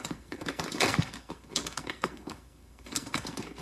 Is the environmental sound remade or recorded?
remade